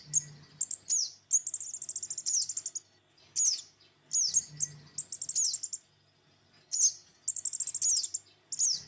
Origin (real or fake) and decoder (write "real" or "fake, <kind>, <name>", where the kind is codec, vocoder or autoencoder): real